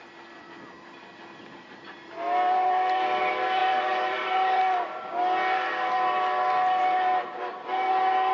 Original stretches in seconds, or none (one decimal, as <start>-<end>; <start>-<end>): 0.0-3.6; 4.6-8.3